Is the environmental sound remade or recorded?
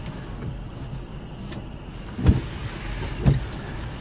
recorded